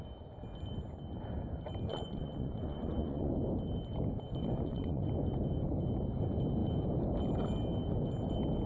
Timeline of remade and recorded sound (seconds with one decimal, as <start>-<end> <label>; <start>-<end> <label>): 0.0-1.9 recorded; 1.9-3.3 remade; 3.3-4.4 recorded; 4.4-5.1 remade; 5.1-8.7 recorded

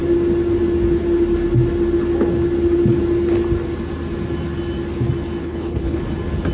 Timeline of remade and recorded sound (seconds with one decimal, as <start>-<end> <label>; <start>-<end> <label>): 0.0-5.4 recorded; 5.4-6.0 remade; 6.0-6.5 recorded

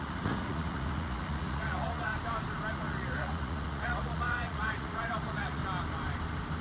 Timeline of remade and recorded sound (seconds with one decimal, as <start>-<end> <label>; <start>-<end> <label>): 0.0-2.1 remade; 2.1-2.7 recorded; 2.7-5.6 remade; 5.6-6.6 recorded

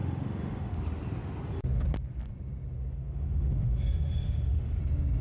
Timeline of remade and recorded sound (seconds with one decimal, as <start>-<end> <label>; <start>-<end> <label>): 0.0-0.7 remade; 0.7-2.9 recorded; 2.9-4.8 remade; 4.8-5.2 recorded

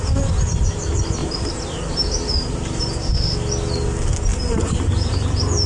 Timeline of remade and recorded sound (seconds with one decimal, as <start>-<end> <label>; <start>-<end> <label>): 0.0-1.2 recorded; 1.2-3.1 remade; 3.1-4.3 recorded; 4.3-5.1 remade; 5.1-5.7 recorded

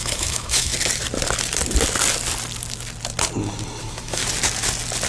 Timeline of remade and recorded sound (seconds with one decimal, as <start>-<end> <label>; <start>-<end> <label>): 0.0-0.7 remade; 0.7-3.8 recorded; 3.8-4.2 remade; 4.2-5.1 recorded

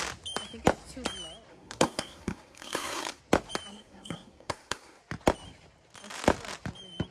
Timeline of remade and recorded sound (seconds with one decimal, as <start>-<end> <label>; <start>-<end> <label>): 0.0-1.5 recorded; 1.5-3.2 remade; 3.2-3.7 recorded; 3.7-5.0 remade; 5.0-7.1 recorded